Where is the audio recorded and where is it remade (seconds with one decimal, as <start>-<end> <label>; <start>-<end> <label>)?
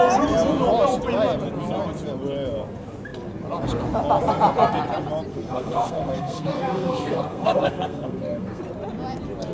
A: 0.0-5.3 recorded; 5.3-8.6 remade; 8.6-9.5 recorded